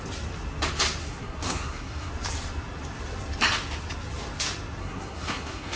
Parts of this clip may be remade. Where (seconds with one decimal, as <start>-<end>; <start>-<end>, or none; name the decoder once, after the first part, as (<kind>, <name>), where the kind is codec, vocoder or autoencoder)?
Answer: 1.0-2.1 (codec, SNAC); 4.8-5.8